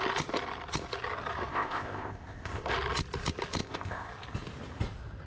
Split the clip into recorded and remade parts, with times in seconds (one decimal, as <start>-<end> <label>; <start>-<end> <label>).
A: 0.0-1.5 recorded; 1.5-2.7 remade; 2.7-3.6 recorded; 3.6-4.1 remade; 4.1-5.3 recorded